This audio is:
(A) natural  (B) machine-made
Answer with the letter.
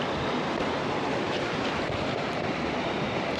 A